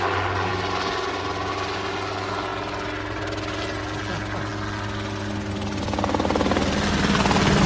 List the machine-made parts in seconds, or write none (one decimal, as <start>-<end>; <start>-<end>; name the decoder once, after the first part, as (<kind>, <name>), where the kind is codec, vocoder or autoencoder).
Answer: none